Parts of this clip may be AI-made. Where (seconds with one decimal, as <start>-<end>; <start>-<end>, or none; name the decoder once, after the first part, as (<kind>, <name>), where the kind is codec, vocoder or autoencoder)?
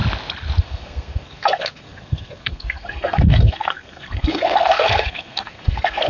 0.6-6.1 (codec, SNAC)